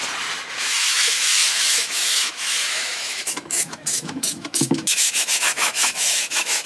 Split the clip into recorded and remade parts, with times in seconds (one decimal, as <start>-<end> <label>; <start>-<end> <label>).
0.0-0.6 recorded; 0.6-6.7 remade